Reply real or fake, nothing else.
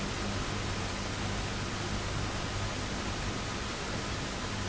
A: real